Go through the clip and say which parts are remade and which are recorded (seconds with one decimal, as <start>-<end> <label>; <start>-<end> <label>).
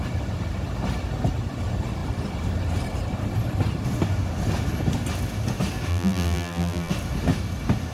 0.0-5.9 recorded; 5.9-6.9 remade; 6.9-7.9 recorded